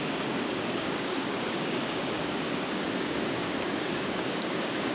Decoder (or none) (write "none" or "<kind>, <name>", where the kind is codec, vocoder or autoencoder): codec, DAC